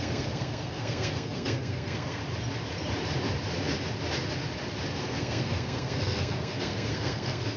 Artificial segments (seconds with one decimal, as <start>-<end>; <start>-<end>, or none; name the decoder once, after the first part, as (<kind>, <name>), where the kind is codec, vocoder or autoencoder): 0.0-2.2 (codec, SNAC); 5.0-7.6